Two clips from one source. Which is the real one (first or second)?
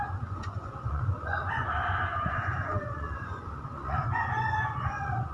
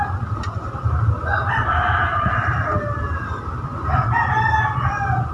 second